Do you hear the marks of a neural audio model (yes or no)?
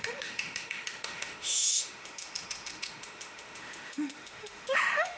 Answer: yes